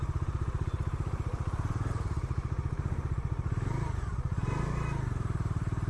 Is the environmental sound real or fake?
fake